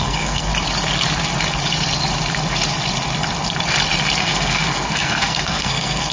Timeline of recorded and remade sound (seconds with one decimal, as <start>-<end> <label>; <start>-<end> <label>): 0.0-0.5 remade; 0.5-4.2 recorded; 4.2-6.1 remade